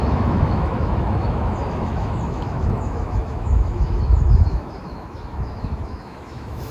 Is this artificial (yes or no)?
yes